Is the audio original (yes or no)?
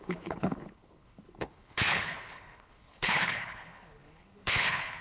no